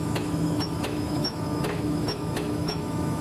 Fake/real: fake